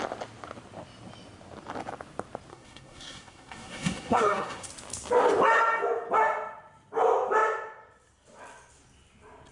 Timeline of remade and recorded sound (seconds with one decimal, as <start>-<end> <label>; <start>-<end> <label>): 0.0-2.5 recorded; 2.5-4.7 remade; 4.7-9.5 recorded